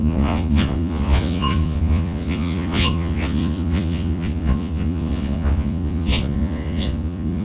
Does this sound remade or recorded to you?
remade